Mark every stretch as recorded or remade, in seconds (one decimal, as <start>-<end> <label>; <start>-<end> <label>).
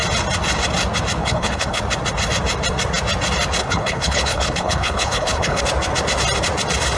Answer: 0.0-1.2 recorded; 1.2-1.8 remade; 1.8-3.6 recorded; 3.6-5.6 remade; 5.6-7.0 recorded